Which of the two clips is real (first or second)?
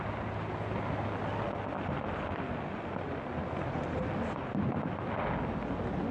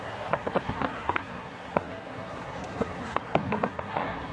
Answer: first